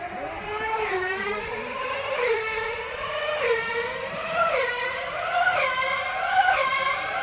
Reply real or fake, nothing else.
fake